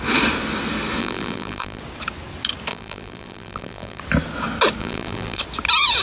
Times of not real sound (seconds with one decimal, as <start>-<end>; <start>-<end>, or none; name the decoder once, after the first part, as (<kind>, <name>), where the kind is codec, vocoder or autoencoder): 1.0-1.8 (vocoder, BigVGAN v2); 2.7-4.0; 4.8-5.4